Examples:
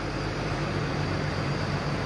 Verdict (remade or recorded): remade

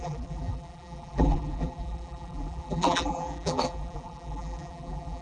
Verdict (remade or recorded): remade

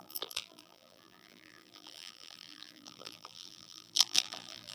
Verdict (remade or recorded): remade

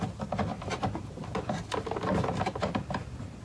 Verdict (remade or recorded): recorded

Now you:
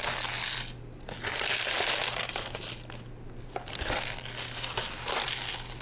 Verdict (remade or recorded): recorded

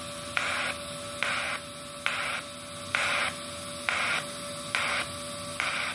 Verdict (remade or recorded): recorded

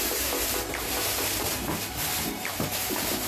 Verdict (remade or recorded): remade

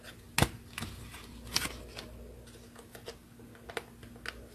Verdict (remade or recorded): recorded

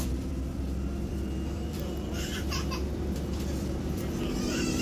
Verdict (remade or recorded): remade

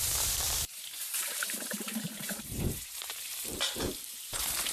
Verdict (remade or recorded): remade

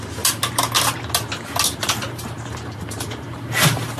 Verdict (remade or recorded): recorded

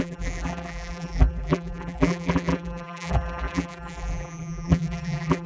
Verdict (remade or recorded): remade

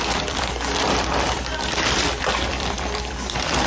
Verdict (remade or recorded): remade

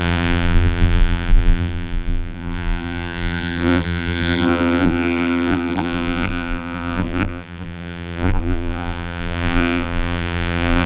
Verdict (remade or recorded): remade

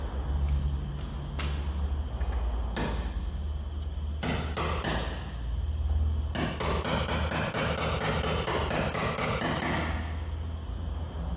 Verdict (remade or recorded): recorded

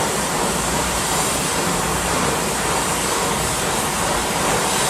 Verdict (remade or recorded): remade